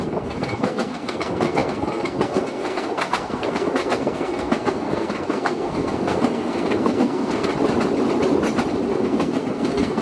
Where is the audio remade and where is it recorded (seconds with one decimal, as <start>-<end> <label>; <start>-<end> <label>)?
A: 0.0-7.5 remade; 7.5-8.9 recorded; 8.9-10.0 remade